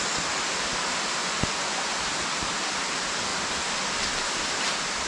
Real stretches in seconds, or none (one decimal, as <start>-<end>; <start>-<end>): 0.0-1.2; 1.9-5.1